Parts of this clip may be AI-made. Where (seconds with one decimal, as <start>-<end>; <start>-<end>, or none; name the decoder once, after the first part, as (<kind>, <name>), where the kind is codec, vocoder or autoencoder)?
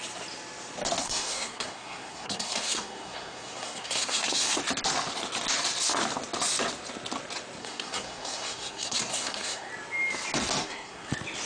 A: 1.0-4.6 (codec, SNAC); 7.6-9.7; 10.6-11.1